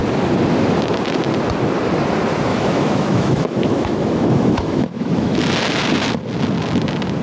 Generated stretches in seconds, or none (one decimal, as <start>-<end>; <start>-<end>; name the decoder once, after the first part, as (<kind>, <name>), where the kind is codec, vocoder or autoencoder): 2.5-5.4 (autoencoder, DAC-VAE)